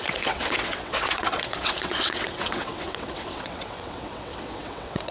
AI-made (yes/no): yes